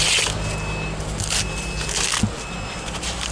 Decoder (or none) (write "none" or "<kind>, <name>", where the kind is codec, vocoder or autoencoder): none